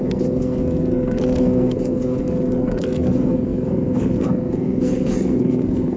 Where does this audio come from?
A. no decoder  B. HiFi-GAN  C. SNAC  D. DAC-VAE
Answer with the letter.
C